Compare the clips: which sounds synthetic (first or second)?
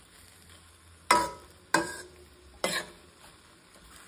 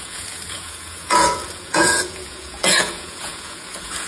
second